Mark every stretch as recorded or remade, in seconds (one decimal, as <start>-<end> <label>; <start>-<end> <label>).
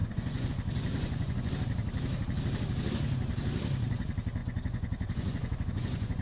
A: 0.0-0.5 remade; 0.5-0.9 recorded; 0.9-1.5 remade; 1.5-4.4 recorded; 4.4-6.2 remade